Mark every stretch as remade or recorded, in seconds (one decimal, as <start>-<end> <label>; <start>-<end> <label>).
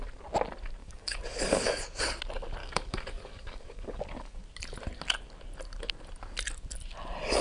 0.0-0.8 recorded; 0.8-2.0 remade; 2.0-2.6 recorded; 2.6-4.4 remade; 4.4-7.4 recorded